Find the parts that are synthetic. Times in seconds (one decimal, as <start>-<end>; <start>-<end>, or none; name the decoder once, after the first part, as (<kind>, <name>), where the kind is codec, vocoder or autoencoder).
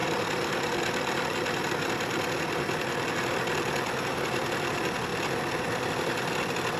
0.0-1.7 (vocoder, BigVGAN v2)